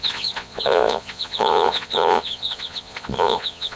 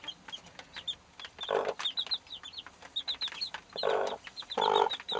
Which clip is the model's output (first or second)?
first